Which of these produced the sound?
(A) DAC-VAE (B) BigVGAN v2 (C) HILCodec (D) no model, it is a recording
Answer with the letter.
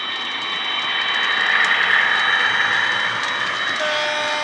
D